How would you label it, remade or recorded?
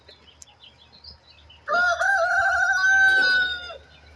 recorded